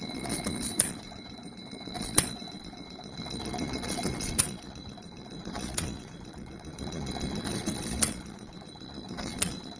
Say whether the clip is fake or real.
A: fake